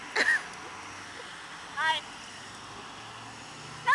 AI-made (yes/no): no